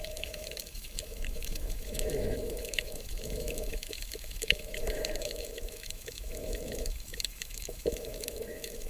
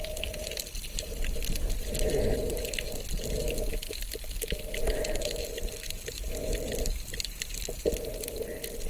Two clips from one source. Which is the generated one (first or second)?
first